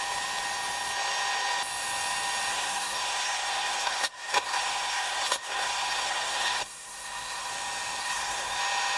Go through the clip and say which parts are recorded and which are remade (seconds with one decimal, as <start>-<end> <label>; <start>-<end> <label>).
0.0-2.5 recorded; 2.5-7.5 remade; 7.5-8.0 recorded; 8.0-8.6 remade; 8.6-9.0 recorded